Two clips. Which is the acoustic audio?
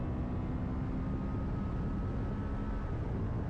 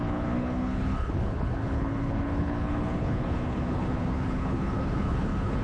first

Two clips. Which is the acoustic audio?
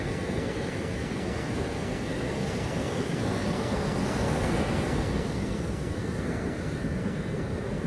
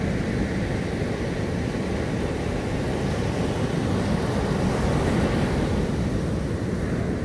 second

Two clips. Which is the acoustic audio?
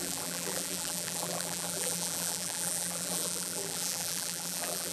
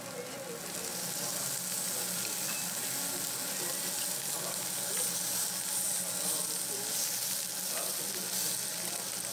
second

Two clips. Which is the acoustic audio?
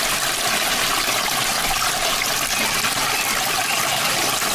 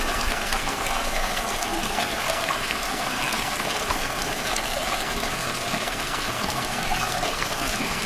first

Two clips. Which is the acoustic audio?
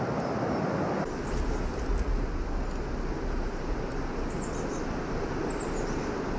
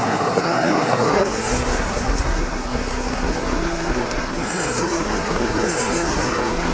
first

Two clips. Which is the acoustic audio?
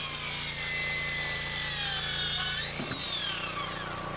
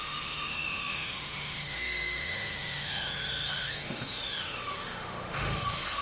first